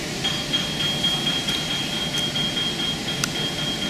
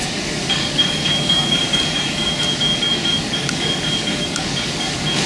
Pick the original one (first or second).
first